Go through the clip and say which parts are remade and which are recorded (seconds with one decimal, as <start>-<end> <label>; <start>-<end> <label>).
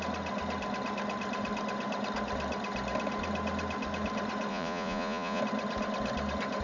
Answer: 0.0-4.5 recorded; 4.5-5.4 remade; 5.4-6.6 recorded